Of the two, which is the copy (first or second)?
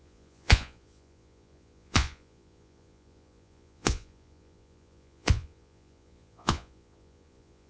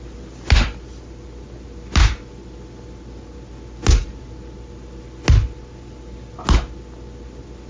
first